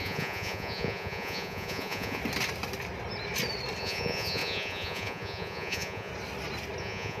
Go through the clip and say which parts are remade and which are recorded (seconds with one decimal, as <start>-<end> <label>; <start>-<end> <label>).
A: 0.0-2.2 remade; 2.2-3.8 recorded; 3.8-6.1 remade; 6.1-6.8 recorded; 6.8-7.2 remade